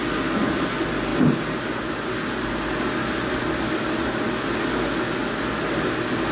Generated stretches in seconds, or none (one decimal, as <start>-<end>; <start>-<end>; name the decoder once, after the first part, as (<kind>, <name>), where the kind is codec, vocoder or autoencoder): none